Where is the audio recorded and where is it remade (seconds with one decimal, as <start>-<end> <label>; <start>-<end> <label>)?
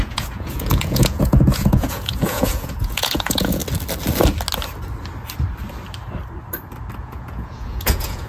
0.0-3.6 remade; 3.6-7.0 recorded; 7.0-8.3 remade